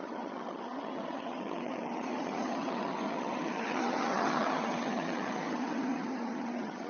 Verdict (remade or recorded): remade